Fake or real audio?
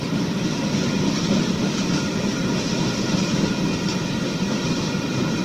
real